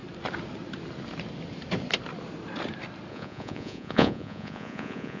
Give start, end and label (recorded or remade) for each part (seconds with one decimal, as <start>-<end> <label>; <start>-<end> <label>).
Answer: 0.0-3.1 recorded; 3.1-5.2 remade